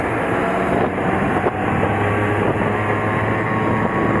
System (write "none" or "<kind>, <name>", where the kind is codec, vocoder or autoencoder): none